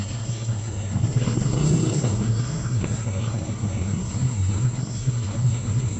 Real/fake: fake